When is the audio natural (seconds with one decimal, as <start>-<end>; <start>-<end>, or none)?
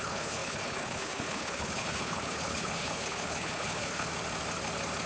4.1-5.1